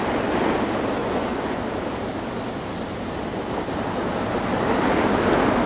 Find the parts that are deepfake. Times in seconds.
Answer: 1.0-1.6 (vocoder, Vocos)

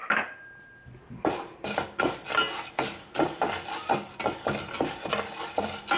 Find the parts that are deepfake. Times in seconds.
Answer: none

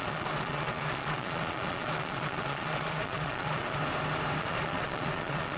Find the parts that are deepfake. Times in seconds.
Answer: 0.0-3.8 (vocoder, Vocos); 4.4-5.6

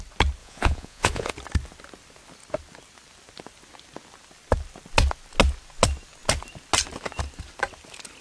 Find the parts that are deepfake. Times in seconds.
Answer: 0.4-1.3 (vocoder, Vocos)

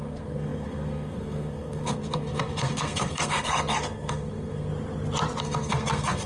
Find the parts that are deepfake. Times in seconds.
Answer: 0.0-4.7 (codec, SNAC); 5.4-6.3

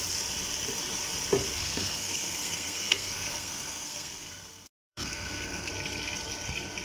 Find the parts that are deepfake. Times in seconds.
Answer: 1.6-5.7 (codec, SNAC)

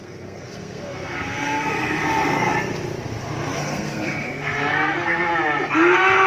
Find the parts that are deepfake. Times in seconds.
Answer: 0.0-2.5 (codec, SNAC); 3.6-5.3